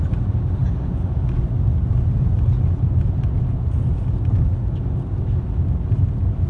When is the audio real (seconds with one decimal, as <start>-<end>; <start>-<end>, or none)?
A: 0.0-6.5